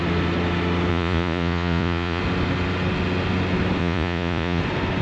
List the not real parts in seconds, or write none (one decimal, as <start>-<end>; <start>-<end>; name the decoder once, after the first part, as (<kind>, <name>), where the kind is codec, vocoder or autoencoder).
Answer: 0.9-2.2 (vocoder, Vocos); 3.8-4.6